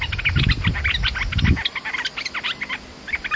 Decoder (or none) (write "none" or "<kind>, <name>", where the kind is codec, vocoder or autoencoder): none